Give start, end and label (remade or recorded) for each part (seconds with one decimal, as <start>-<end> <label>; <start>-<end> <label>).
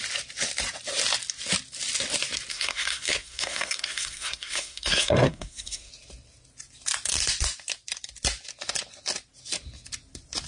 0.0-2.5 recorded; 2.5-5.9 remade; 5.9-10.5 recorded